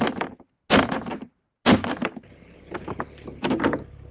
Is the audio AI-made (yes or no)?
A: no